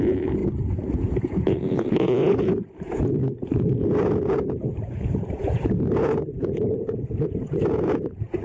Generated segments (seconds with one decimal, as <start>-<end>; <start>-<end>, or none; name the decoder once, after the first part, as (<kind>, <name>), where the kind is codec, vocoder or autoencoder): 0.0-8.4 (vocoder, Vocos)